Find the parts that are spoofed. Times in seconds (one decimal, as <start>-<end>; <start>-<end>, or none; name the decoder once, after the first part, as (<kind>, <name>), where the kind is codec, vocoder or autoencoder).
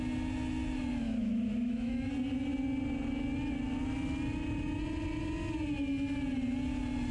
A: 0.9-2.1 (autoencoder, DAC-VAE)